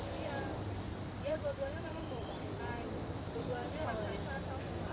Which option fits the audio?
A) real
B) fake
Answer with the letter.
B